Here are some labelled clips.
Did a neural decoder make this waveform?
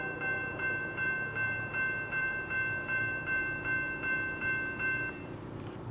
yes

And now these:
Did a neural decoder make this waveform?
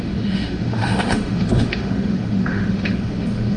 yes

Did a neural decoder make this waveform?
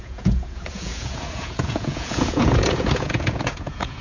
yes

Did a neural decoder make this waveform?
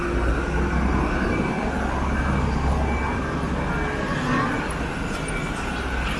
no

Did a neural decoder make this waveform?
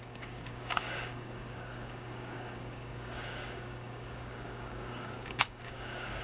yes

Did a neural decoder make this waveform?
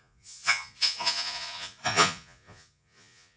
yes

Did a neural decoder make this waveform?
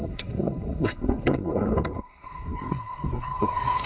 yes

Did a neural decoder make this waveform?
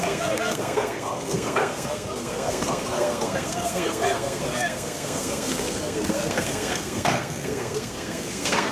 yes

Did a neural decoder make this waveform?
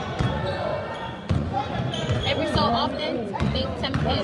yes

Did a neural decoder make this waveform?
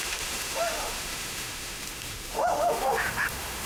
yes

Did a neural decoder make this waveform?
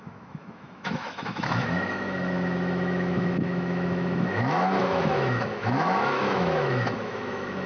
yes